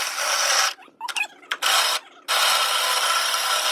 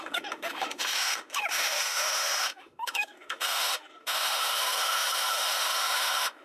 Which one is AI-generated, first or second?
second